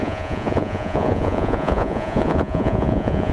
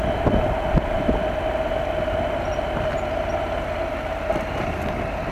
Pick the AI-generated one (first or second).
first